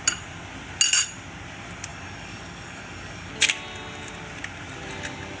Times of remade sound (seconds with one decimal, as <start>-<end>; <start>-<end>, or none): 1.9-3.3